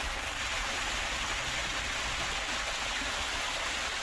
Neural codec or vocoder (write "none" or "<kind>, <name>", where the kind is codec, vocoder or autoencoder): none